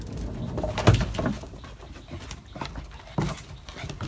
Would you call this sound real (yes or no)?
yes